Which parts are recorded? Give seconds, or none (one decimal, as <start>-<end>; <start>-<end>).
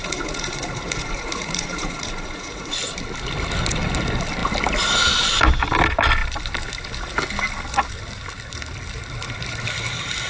2.7-10.3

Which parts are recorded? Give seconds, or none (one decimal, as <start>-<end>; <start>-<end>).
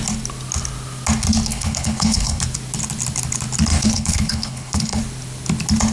0.0-1.5; 2.4-3.7; 5.0-5.9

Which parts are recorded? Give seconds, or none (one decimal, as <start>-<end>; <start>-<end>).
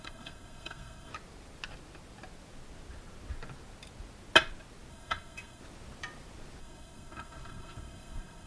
1.1-4.9; 5.6-6.6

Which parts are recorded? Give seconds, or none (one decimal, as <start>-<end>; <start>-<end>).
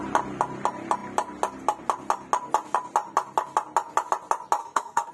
0.0-4.6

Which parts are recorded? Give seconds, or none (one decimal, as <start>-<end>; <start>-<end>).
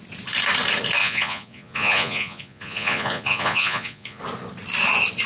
0.0-1.0; 4.2-5.3